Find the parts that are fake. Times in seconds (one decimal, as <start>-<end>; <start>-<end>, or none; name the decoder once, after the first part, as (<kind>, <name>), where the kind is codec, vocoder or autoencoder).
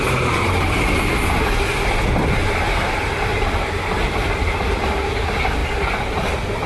none